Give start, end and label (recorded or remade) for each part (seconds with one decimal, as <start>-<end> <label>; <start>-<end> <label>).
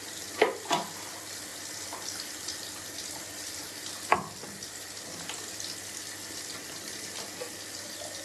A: 0.0-8.2 recorded